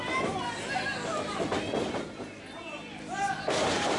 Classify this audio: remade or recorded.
recorded